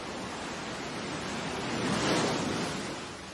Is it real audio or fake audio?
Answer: real